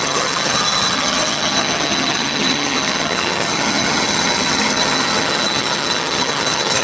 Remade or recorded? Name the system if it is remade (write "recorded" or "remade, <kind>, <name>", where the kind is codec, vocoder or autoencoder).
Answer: remade, vocoder, HiFi-GAN